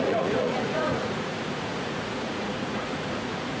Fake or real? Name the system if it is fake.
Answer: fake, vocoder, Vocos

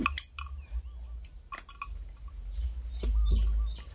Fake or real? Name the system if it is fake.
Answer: real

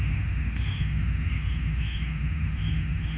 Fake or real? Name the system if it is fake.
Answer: fake, autoencoder, DAC-VAE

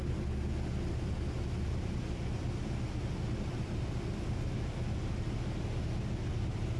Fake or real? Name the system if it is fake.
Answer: real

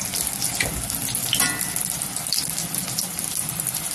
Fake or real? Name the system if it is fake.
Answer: real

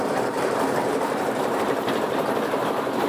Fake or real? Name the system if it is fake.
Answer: fake, vocoder, BigVGAN v2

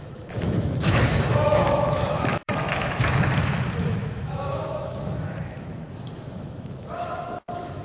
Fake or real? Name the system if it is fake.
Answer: fake, autoencoder, DAC-VAE